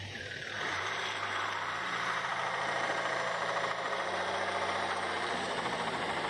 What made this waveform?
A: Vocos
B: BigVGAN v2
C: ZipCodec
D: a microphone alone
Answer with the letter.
B